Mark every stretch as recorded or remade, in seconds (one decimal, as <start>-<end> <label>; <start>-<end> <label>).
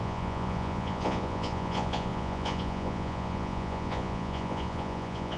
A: 0.0-5.4 remade